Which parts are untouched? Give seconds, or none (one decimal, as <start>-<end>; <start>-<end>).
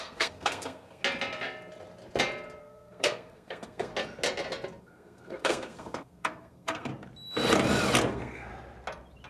1.0-2.6; 3.9-4.8; 6.9-8.1; 8.5-9.3